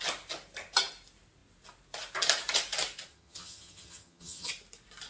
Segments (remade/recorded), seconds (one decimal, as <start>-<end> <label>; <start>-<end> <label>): 0.0-3.1 recorded; 3.1-4.5 remade; 4.5-5.1 recorded